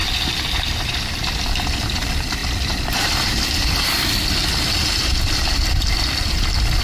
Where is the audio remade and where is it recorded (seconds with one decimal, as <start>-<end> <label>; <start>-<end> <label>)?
0.0-6.8 recorded